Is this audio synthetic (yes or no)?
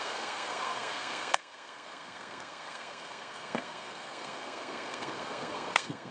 yes